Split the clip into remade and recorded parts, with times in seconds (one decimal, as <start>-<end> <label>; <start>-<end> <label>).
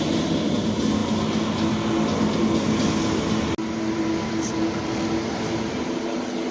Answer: 0.0-6.5 recorded